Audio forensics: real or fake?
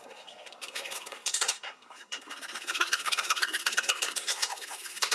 fake